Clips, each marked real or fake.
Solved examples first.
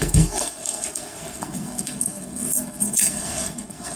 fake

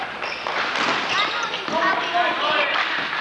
real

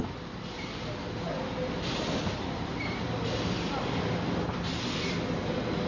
real